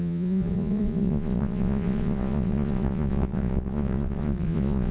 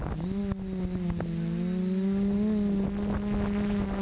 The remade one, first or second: first